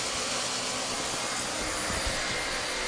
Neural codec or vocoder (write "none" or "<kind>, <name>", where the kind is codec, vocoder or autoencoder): none